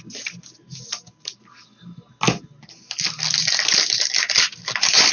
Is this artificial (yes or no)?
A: no